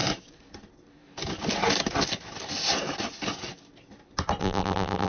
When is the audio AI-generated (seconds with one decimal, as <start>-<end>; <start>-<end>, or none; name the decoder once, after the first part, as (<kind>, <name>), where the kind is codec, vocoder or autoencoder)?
4.4-5.1 (vocoder, BigVGAN v2)